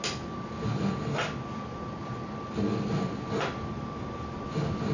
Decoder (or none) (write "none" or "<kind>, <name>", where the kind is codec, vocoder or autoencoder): none